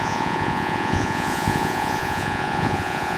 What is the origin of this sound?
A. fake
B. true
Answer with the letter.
A